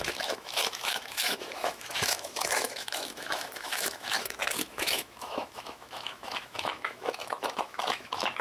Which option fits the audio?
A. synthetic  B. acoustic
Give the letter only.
A